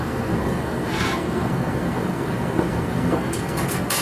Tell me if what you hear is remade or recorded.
remade